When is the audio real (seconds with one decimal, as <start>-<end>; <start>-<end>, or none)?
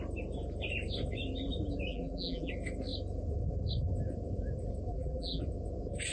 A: 0.0-1.9; 2.5-4.9; 5.4-6.1